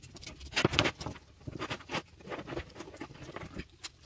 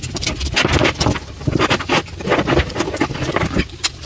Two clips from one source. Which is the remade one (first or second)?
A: first